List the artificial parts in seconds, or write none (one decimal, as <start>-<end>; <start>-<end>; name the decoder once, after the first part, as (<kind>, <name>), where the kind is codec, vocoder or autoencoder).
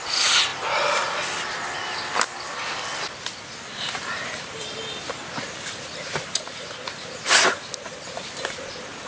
none